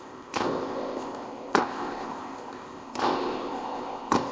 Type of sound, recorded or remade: remade